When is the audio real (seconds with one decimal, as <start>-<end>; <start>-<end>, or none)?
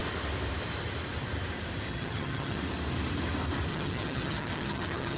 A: 0.0-1.9; 2.6-3.7